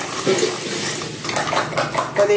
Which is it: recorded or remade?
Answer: recorded